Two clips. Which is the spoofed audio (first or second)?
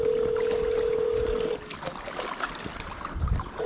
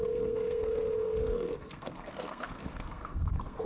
second